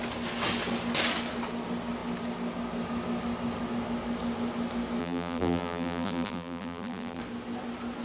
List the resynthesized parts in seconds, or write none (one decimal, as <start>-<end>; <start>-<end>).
5.0-7.2